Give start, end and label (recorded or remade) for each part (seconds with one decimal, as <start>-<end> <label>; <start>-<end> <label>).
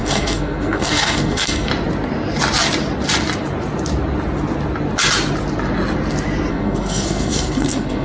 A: 0.0-1.7 remade; 1.7-6.5 recorded; 6.5-8.0 remade